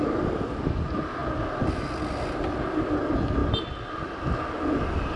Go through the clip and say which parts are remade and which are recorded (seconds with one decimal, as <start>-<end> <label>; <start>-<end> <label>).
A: 0.0-5.2 recorded